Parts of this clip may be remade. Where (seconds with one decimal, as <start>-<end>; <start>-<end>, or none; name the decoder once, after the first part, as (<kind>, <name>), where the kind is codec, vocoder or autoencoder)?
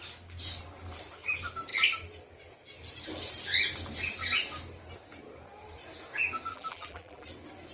6.5-7.3 (vocoder, BigVGAN v2)